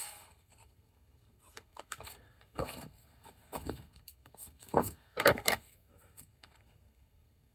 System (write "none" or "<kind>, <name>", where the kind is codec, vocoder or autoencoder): codec, SNAC